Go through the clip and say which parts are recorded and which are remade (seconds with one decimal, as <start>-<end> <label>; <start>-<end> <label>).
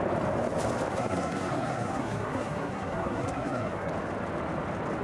0.0-0.9 recorded; 0.9-3.9 remade; 3.9-5.0 recorded